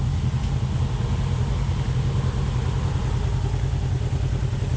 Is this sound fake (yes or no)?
no